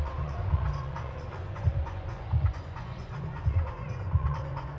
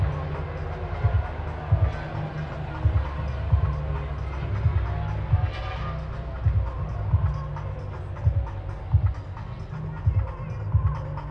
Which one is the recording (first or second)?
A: second